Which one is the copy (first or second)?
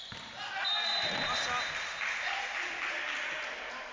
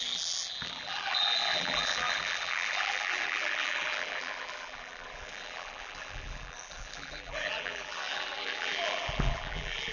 second